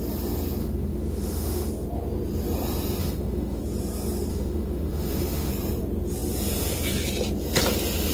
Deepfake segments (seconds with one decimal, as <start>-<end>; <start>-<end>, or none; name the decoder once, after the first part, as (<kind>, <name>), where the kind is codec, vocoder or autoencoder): 0.6-1.7 (autoencoder, DAC-VAE); 3.0-3.6; 4.3-5.5